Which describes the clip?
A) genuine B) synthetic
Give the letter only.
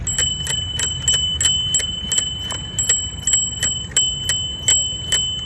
A